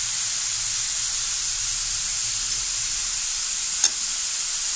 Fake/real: real